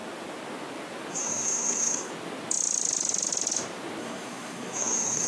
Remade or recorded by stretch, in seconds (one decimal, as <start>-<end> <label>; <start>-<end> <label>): 0.0-1.1 recorded; 1.1-2.1 remade; 2.1-4.0 recorded; 4.0-5.3 remade